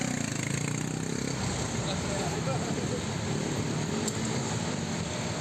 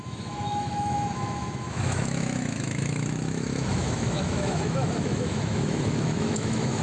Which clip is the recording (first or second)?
first